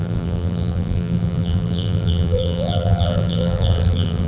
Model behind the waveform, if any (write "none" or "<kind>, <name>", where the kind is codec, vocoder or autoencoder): vocoder, BigVGAN v2